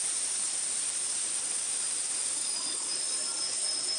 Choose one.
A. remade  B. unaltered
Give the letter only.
A